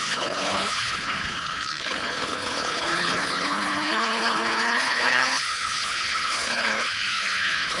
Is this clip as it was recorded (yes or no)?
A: no